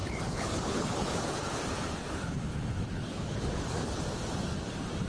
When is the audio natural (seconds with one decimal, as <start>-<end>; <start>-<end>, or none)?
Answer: 1.6-2.0; 4.0-5.1